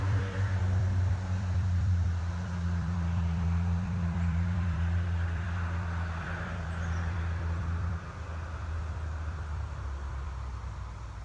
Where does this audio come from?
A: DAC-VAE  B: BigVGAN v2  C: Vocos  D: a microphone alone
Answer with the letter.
B